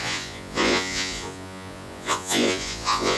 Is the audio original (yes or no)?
no